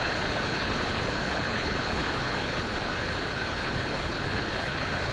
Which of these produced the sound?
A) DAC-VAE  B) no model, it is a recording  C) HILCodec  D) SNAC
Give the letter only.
C